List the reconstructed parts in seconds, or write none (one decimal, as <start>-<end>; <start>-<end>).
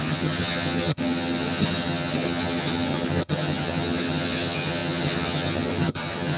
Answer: 0.0-6.4